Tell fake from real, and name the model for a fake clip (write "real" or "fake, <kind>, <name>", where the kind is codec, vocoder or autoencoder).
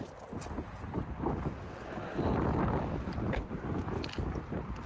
real